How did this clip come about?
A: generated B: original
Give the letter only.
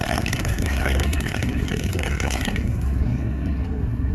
A